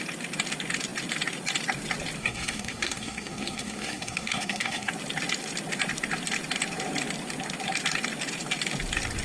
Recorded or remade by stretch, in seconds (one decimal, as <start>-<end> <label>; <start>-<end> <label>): 0.0-2.2 recorded; 2.2-4.9 remade; 4.9-9.2 recorded